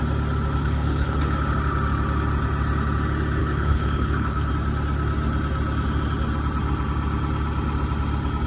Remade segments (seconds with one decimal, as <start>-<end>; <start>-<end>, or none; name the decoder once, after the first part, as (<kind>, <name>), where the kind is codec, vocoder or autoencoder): 0.6-1.2 (codec, HILCodec); 3.4-4.5